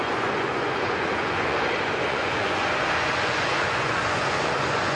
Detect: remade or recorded remade